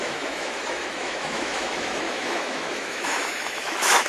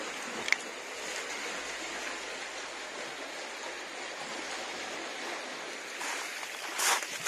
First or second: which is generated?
first